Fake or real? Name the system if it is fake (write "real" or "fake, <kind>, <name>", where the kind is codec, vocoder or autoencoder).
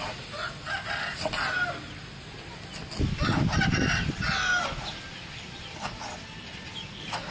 real